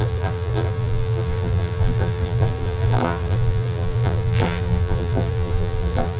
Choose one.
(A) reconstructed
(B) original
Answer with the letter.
A